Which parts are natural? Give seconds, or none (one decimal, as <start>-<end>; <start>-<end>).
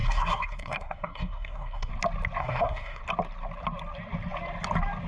1.9-2.4; 3.0-5.1